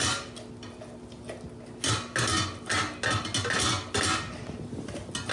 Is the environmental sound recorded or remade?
recorded